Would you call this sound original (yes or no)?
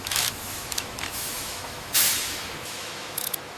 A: no